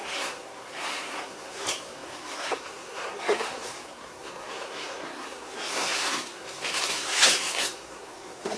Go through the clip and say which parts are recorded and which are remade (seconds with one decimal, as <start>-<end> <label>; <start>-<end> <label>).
0.0-8.6 remade